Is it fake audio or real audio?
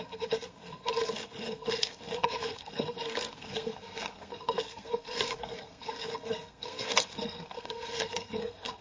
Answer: fake